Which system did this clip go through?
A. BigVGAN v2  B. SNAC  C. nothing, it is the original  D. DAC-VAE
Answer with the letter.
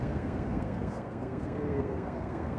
B